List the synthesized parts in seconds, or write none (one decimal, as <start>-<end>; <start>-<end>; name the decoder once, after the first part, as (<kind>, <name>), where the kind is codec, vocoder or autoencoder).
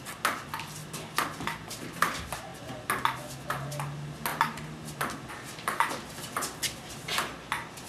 none